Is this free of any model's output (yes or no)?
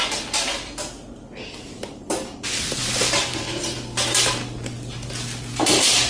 yes